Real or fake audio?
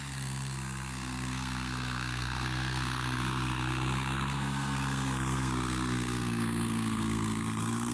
fake